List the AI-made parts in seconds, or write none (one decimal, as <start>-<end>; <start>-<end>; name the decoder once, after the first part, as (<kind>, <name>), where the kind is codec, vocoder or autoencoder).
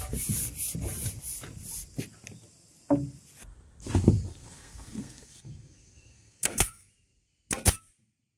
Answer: 4.3-6.9 (codec, SNAC)